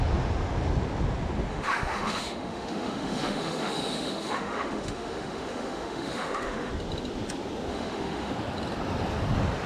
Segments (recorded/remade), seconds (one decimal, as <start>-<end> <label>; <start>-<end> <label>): 0.0-1.5 recorded; 1.5-6.7 remade; 6.7-7.7 recorded; 7.7-8.3 remade; 8.3-9.7 recorded